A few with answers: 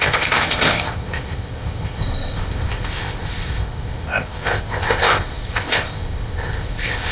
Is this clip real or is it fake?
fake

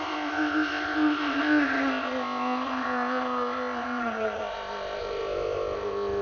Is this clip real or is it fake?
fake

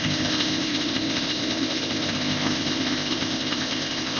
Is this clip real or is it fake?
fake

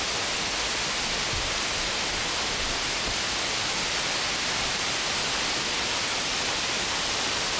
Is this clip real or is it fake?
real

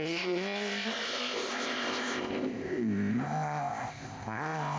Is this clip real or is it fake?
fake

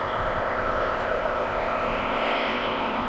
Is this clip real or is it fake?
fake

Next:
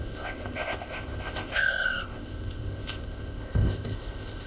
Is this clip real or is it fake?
fake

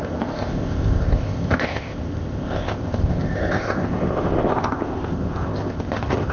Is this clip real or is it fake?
fake